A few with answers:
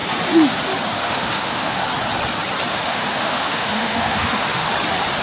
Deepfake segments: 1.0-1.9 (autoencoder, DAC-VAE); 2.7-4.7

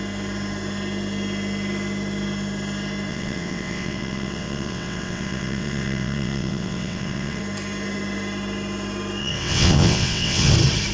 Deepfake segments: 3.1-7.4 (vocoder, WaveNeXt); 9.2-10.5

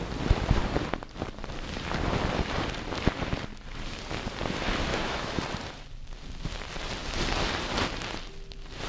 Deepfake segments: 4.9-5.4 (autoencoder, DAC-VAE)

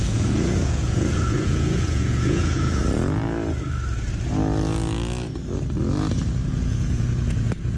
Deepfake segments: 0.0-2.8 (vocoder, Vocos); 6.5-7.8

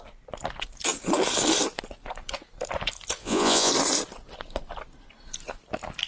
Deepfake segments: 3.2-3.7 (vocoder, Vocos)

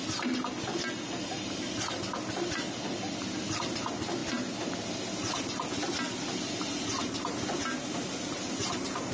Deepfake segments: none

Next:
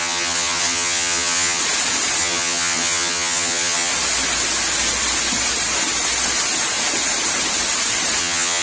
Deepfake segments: 0.0-1.6 (vocoder, HiFi-GAN); 2.2-3.9; 8.2-8.6